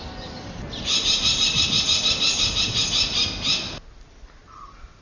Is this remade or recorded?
recorded